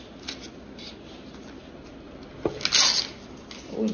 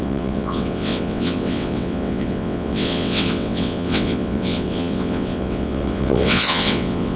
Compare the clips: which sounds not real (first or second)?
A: second